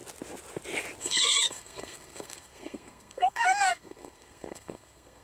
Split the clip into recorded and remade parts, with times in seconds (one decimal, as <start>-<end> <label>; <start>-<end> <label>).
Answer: 0.0-1.0 recorded; 1.0-5.2 remade